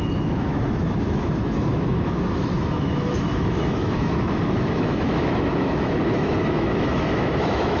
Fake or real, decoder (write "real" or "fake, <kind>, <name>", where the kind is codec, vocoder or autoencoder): fake, autoencoder, DAC-VAE